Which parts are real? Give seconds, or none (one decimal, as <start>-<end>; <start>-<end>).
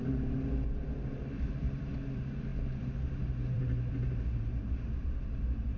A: none